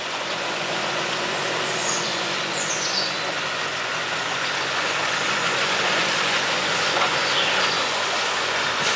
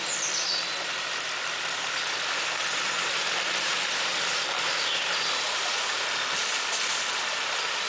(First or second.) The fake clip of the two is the first